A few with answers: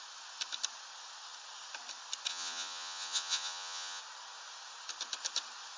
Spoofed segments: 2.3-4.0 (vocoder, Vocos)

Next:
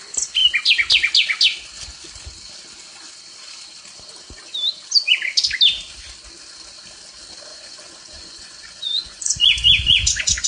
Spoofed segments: 7.5-10.5 (vocoder, Vocos)